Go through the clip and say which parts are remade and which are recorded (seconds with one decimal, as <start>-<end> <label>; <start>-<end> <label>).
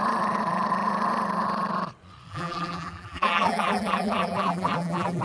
0.0-2.3 recorded; 2.3-5.2 remade